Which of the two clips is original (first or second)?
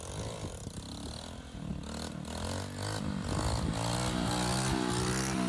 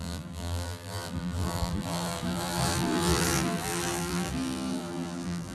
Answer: first